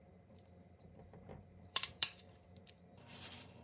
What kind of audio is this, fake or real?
fake